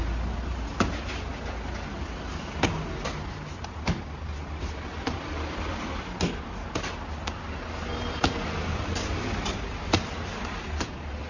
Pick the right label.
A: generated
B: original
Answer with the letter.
B